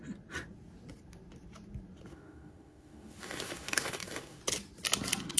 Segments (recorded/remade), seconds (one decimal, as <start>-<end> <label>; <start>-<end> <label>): 0.0-2.1 recorded; 2.1-4.4 remade; 4.4-5.4 recorded